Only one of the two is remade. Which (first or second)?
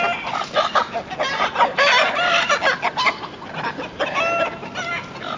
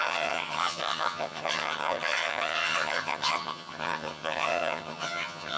second